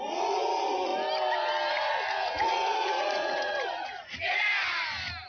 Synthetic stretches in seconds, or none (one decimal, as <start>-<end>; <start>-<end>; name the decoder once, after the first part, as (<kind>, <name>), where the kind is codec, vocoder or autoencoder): 0.0-0.9 (vocoder, Vocos); 1.7-4.4